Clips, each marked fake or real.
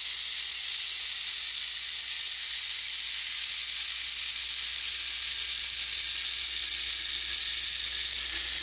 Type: real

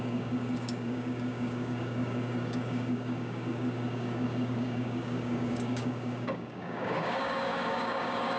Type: fake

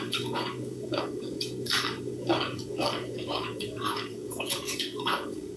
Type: fake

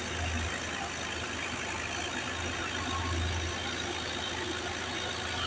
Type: real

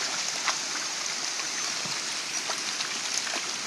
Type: real